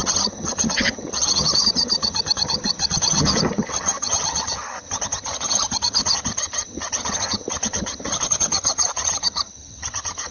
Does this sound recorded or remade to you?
remade